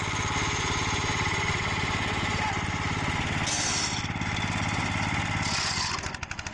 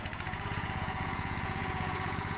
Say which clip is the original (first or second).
first